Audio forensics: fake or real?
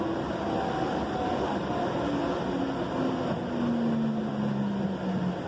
real